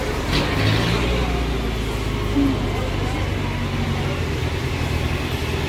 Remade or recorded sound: recorded